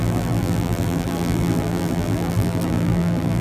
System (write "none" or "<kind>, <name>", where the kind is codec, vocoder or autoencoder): vocoder, BigVGAN v2